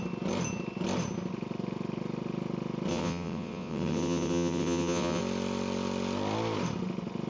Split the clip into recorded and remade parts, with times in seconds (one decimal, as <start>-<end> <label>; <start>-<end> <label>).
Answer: 0.0-2.9 recorded; 2.9-5.2 remade; 5.2-7.3 recorded